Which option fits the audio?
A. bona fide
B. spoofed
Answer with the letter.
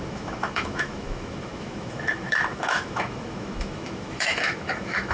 B